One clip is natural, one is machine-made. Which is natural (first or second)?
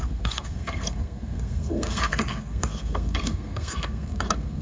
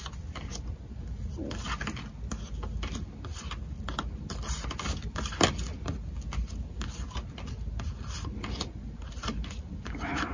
second